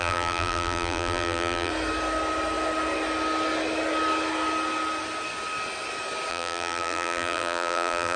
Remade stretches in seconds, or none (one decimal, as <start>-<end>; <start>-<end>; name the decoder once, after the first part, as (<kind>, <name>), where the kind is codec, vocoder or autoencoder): 0.0-1.7 (vocoder, BigVGAN v2); 6.3-8.2